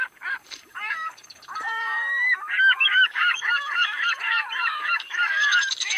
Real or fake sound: fake